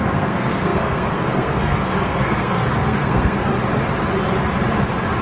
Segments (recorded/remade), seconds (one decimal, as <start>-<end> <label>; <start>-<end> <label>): 0.0-3.5 remade; 3.5-5.2 recorded